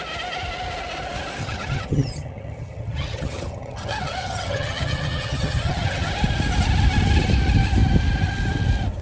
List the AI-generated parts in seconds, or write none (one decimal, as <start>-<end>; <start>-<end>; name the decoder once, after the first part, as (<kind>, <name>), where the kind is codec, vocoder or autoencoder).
1.4-6.1 (vocoder, HiFi-GAN)

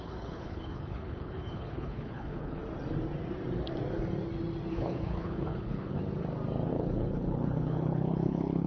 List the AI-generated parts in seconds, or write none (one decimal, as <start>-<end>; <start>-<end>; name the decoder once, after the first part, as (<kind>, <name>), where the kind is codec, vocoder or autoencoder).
0.0-2.6 (codec, HILCodec); 4.7-6.0; 6.7-8.7

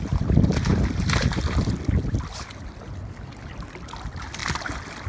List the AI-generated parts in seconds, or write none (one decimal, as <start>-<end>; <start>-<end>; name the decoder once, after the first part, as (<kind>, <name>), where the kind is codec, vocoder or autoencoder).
none